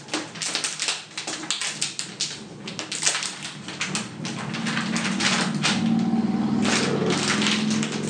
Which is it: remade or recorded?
recorded